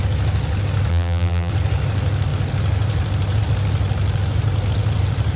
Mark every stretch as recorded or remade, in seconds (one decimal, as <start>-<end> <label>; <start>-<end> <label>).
0.0-0.9 recorded; 0.9-1.5 remade; 1.5-5.4 recorded